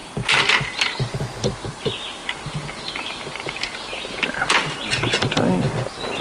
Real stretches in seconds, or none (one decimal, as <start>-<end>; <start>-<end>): 0.0-6.2